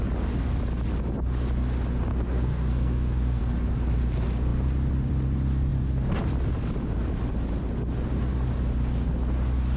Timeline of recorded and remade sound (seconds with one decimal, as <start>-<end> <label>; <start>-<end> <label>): 0.0-2.1 recorded; 2.1-3.4 remade; 3.4-9.8 recorded